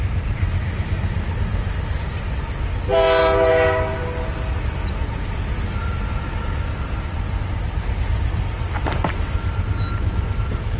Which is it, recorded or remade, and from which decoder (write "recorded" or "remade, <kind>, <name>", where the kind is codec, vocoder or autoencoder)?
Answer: recorded